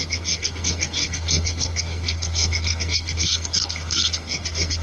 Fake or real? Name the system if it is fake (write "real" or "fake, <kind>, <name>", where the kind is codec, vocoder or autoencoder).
fake, codec, SNAC